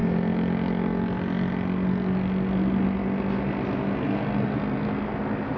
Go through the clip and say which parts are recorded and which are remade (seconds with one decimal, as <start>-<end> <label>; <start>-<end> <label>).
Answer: 0.0-5.6 recorded